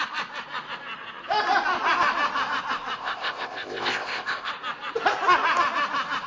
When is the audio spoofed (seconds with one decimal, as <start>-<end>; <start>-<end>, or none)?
3.0-4.5